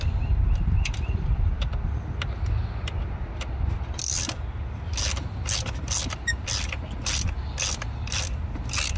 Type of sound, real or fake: real